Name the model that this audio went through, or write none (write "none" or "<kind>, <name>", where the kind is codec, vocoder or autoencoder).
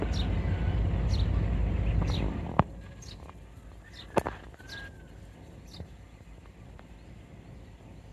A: none